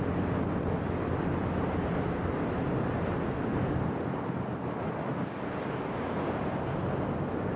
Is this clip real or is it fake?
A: real